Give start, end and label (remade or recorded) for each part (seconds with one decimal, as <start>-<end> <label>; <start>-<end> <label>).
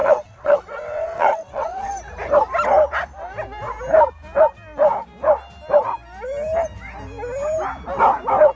0.0-1.9 remade; 1.9-8.6 recorded